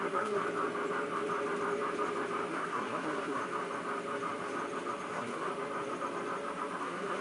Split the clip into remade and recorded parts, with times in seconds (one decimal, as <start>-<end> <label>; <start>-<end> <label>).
0.0-0.4 remade; 0.4-2.5 recorded; 2.5-3.4 remade; 3.4-5.1 recorded; 5.1-5.5 remade; 5.5-6.8 recorded; 6.8-7.2 remade